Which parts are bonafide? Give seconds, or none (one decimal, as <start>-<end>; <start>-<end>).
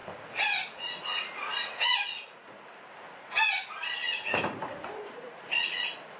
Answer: none